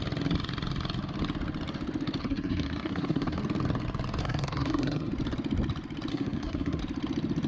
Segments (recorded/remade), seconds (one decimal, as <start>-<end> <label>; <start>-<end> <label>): 0.0-2.2 recorded; 2.2-3.4 remade; 3.4-4.2 recorded; 4.2-5.1 remade; 5.1-6.1 recorded; 6.1-6.8 remade; 6.8-7.5 recorded